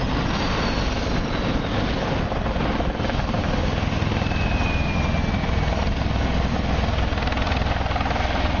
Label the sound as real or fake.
real